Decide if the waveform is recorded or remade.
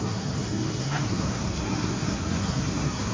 remade